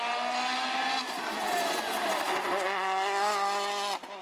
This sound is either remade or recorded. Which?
recorded